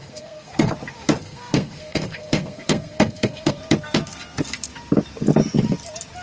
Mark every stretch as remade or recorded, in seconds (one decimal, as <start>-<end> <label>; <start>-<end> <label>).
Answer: 0.0-0.7 remade; 0.7-1.2 recorded; 1.2-3.6 remade; 3.6-6.2 recorded